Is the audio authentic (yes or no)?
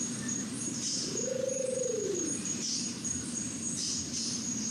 no